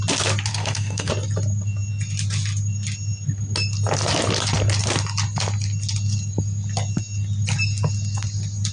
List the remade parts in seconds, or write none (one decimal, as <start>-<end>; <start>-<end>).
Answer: 0.5-1.1